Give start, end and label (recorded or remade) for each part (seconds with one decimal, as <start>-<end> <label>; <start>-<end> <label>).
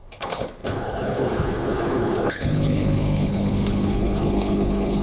0.0-5.0 remade